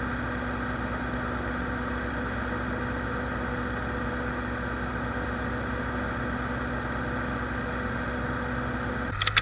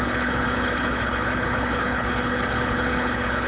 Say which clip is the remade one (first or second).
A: second